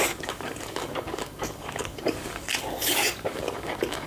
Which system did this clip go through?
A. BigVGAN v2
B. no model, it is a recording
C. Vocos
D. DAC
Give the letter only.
D